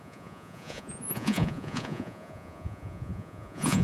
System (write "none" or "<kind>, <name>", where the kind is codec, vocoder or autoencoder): vocoder, Vocos